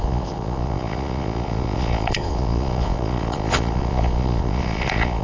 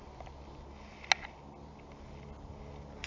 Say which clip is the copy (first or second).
first